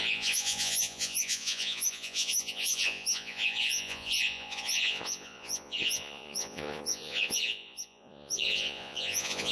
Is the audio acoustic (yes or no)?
no